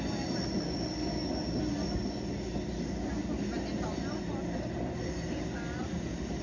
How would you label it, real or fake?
real